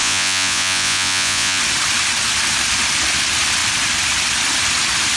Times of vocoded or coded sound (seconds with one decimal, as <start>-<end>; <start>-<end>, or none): 0.0-1.6